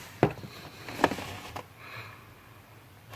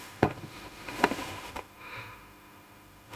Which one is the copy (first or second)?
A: second